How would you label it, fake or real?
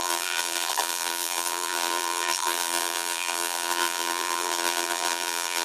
fake